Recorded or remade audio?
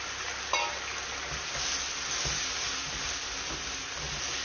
recorded